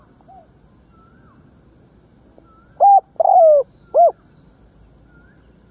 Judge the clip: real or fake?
real